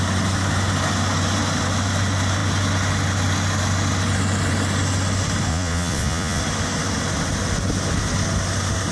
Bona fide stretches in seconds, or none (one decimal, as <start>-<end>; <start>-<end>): 0.0-5.5; 6.4-8.9